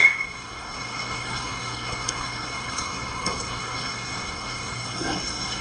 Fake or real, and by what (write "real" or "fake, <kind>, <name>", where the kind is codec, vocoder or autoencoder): fake, codec, SNAC